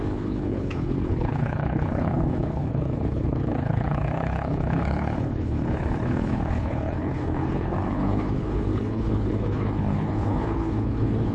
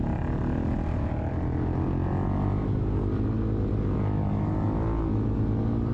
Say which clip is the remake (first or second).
first